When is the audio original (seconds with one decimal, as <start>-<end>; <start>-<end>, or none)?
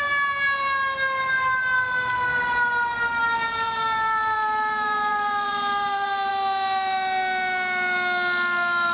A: 0.0-3.2; 6.3-8.9